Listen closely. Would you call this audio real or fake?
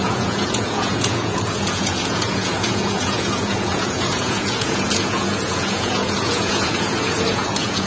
fake